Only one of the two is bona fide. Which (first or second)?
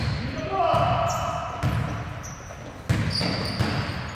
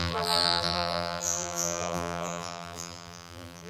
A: first